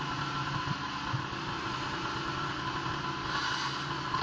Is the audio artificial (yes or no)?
no